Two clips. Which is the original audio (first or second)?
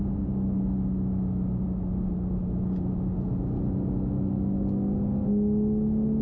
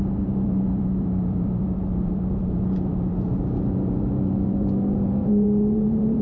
first